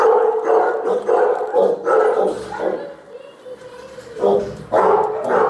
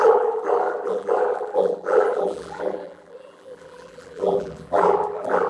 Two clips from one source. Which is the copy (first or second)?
second